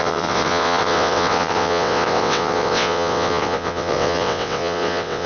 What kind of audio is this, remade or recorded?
remade